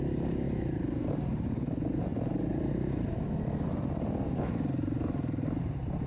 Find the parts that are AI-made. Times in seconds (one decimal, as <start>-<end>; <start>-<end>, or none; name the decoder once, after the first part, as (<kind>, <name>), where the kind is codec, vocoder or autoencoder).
2.1-4.4 (vocoder, BigVGAN v2)

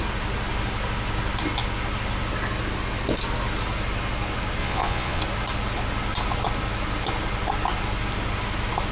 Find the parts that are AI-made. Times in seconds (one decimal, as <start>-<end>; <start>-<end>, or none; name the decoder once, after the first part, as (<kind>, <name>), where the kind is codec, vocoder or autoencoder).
4.6-5.2 (vocoder, Vocos)

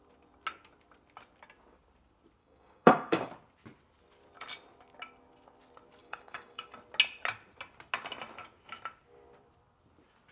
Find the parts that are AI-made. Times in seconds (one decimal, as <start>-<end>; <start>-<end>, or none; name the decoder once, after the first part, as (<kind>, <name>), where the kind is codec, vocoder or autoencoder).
2.4-3.3 (codec, DAC); 6.0-6.7

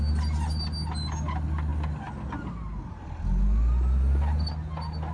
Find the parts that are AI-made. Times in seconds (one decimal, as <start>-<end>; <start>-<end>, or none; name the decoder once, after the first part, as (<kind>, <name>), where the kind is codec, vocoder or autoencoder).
none

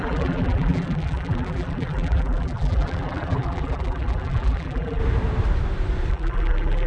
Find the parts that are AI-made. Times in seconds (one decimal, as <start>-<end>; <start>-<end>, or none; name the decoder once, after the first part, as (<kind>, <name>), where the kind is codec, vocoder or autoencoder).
0.0-5.0 (vocoder, BigVGAN v2); 6.1-6.9

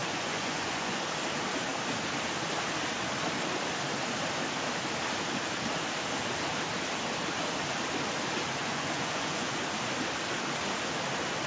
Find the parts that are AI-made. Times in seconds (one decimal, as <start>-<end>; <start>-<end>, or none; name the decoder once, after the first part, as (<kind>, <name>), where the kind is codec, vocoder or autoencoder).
0.0-1.0 (vocoder, Vocos); 8.6-9.6